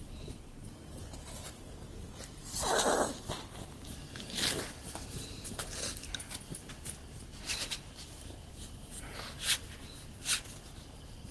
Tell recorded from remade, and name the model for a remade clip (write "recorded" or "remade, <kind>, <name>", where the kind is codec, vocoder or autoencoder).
recorded